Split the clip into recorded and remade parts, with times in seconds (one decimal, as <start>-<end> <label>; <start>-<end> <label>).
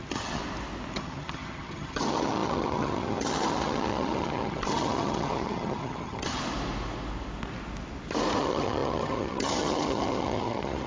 0.0-0.4 remade; 0.4-0.9 recorded; 0.9-6.4 remade; 6.4-8.4 recorded; 8.4-10.9 remade